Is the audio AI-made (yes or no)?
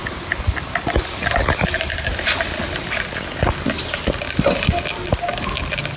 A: no